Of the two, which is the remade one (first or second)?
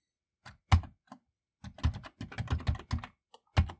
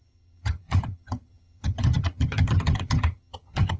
second